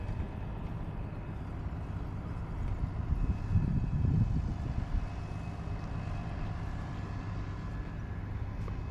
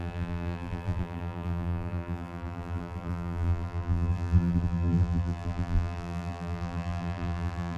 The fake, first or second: second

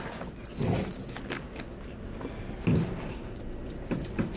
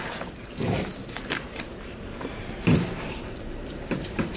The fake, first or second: second